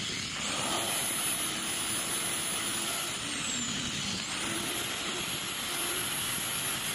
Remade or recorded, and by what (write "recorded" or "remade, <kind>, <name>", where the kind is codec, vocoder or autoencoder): recorded